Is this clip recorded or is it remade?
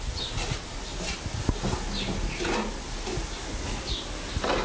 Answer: recorded